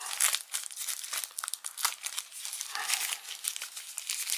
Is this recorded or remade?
recorded